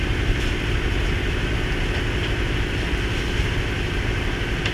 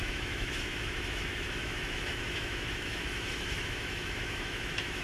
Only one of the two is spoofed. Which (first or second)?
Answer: second